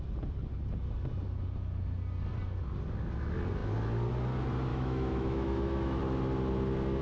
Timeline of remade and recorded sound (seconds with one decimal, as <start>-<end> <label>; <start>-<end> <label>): 0.0-4.7 recorded; 4.7-6.0 remade; 6.0-7.0 recorded